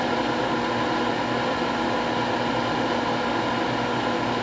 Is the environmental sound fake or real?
real